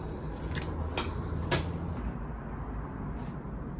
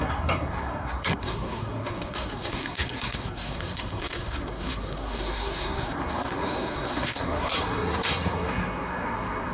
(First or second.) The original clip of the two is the first